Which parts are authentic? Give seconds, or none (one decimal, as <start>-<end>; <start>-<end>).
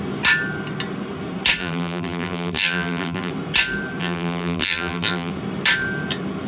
0.0-1.6; 3.3-4.0; 5.3-6.5